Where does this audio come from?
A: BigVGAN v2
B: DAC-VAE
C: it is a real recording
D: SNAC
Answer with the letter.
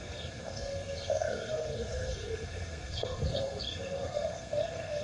D